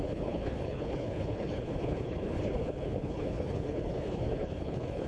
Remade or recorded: remade